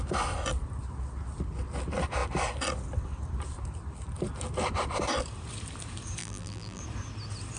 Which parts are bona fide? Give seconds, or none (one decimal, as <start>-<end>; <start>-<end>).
0.0-6.2; 6.8-7.6